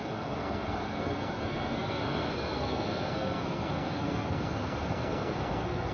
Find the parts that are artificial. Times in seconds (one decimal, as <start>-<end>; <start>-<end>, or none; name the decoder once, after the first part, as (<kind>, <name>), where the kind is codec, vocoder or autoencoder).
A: 0.0-5.9 (codec, SNAC)